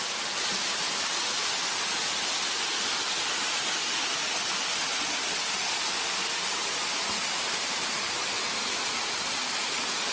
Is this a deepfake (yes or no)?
no